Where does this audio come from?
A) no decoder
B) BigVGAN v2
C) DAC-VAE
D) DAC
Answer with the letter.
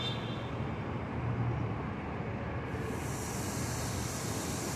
A